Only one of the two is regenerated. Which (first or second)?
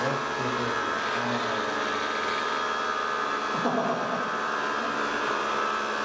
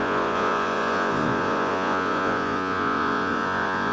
second